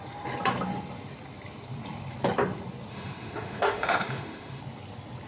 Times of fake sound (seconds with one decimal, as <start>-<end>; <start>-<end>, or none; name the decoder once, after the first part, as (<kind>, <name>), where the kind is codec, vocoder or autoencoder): 2.9-4.6 (autoencoder, DAC-VAE)